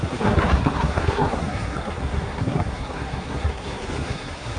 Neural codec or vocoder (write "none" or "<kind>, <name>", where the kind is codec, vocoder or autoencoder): codec, SNAC